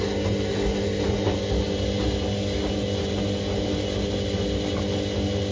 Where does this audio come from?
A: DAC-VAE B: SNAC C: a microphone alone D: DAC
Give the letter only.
C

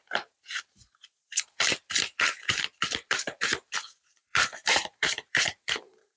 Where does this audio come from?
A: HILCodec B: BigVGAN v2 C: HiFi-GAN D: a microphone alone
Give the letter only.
B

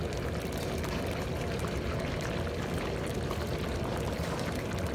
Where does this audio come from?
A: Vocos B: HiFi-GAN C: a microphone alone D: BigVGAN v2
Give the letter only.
C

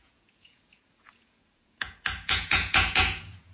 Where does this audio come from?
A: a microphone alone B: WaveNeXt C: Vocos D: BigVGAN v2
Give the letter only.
C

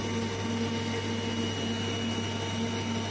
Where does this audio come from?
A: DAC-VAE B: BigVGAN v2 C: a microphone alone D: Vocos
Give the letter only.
C